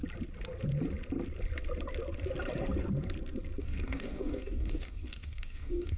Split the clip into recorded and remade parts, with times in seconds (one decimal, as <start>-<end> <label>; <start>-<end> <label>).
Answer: 0.0-3.6 recorded; 3.6-6.0 remade